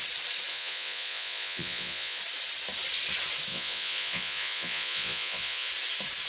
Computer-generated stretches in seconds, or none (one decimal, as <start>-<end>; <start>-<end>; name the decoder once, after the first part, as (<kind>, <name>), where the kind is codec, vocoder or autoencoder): 0.5-2.2 (vocoder, Vocos); 3.5-5.7